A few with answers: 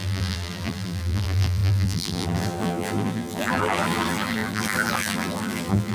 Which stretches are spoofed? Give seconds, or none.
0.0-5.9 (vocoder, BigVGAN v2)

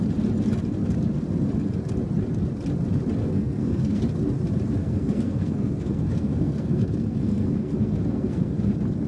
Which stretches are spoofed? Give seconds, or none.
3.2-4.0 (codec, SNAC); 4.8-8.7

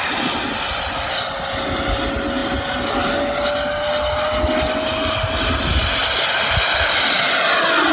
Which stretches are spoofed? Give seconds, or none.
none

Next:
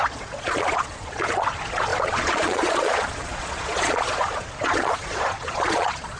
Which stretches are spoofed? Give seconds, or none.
0.0-6.2 (vocoder, Vocos)

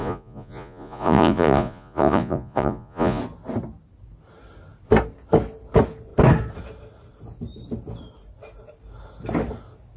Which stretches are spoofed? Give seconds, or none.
0.0-3.2 (vocoder, Vocos)

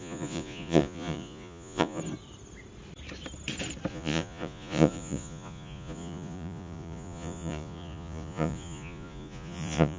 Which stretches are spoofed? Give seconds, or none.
0.0-2.0 (vocoder, Vocos); 3.9-10.0

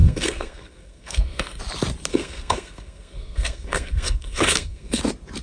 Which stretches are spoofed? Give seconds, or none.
0.0-1.6 (codec, SNAC); 2.1-5.0

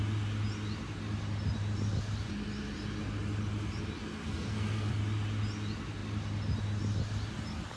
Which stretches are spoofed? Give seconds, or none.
4.2-4.9 (codec, SNAC)